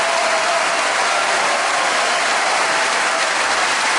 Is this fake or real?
fake